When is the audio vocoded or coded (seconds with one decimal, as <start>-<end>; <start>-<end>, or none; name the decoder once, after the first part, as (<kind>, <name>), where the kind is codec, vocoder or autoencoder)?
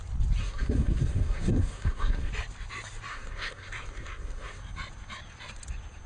0.4-2.3 (codec, SNAC); 3.1-4.6